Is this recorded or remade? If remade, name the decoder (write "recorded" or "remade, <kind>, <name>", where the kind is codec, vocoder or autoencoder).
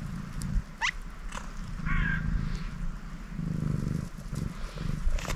recorded